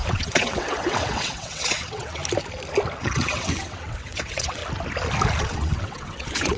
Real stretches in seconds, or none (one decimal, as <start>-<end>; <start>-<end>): 2.2-3.0; 4.6-5.4